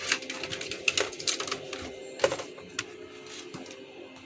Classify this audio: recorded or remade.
recorded